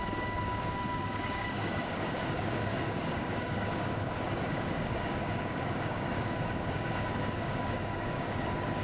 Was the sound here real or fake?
fake